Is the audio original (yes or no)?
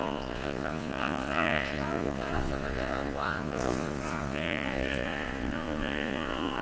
no